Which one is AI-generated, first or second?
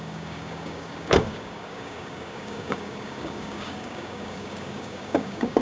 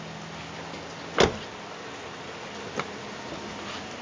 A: first